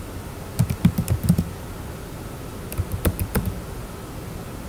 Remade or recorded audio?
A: recorded